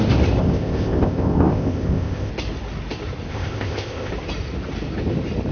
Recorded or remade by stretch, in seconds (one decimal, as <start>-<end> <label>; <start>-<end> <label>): 0.0-0.4 recorded; 0.4-2.3 remade; 2.3-3.3 recorded; 3.3-4.1 remade; 4.1-5.5 recorded